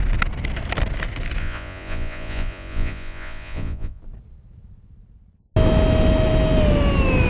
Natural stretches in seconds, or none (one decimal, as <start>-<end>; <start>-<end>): 0.0-1.4; 4.0-7.3